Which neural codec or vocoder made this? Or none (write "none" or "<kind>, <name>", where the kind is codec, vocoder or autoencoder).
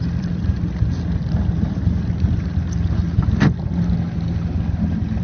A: none